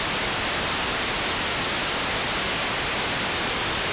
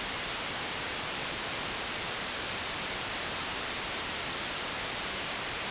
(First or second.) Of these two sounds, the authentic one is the first